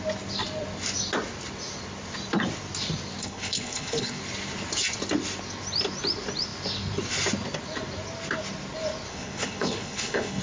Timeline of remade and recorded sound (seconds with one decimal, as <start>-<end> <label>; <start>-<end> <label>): 0.0-3.2 recorded; 3.2-4.2 remade; 4.2-9.1 recorded; 9.1-10.4 remade